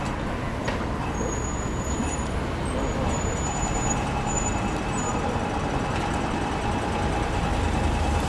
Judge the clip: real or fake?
real